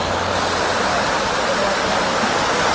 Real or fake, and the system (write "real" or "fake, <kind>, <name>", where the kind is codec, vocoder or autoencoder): real